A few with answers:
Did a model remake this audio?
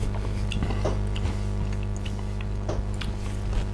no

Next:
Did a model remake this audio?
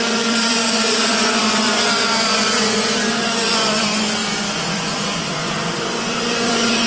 yes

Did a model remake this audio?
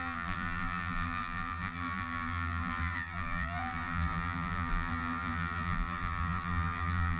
yes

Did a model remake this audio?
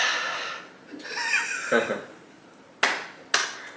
no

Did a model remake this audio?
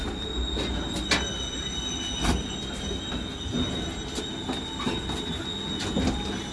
no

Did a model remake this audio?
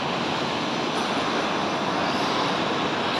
no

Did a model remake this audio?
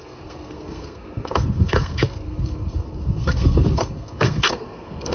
yes